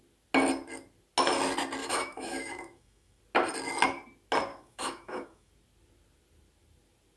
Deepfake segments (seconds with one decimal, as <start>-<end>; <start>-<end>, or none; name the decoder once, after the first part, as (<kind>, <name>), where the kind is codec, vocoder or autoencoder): 1.8-3.2 (autoencoder, DAC-VAE); 4.5-5.5

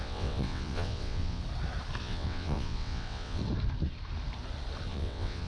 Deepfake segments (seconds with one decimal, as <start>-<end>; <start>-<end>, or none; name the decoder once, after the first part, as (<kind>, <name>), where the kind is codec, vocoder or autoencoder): 0.0-1.4 (vocoder, WaveNeXt); 2.0-3.4; 4.9-5.5